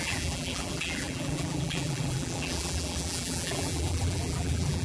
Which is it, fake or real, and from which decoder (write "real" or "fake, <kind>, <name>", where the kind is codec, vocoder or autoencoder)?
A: fake, vocoder, BigVGAN v2